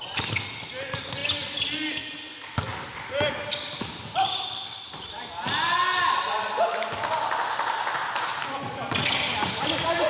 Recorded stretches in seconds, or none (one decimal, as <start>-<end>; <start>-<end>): 0.0-10.1